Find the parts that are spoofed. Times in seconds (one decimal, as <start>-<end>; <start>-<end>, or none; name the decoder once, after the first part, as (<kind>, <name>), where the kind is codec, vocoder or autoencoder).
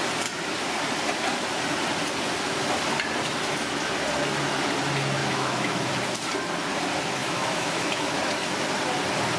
5.2-5.9 (autoencoder, DAC-VAE); 7.2-8.3